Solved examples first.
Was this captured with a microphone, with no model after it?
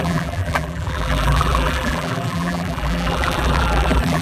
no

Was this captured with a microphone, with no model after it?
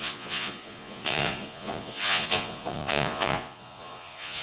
no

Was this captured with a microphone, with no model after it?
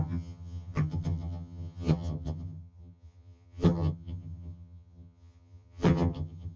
no